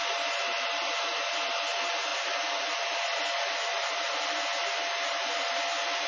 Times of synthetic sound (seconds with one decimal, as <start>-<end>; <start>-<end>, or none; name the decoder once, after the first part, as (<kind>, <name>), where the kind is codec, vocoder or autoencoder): 2.1-3.2 (vocoder, BigVGAN v2); 3.7-4.3

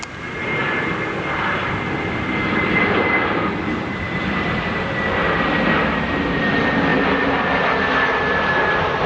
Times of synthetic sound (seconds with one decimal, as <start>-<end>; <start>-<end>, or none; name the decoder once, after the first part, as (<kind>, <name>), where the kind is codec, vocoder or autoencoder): 0.6-4.9 (vocoder, BigVGAN v2); 6.9-7.9

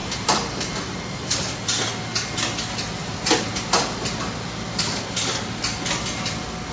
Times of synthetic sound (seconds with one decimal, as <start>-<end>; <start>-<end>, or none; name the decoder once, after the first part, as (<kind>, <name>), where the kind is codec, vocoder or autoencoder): 0.0-1.0 (vocoder, BigVGAN v2); 3.0-3.5

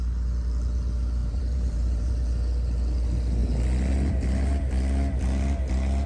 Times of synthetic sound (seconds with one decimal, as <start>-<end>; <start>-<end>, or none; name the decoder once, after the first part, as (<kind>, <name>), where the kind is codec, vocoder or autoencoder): 1.2-2.1 (vocoder, BigVGAN v2)

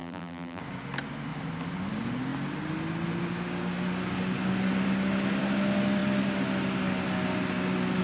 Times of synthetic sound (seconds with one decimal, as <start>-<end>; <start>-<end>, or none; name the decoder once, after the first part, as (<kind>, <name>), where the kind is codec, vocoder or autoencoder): 0.0-0.6 (vocoder, BigVGAN v2)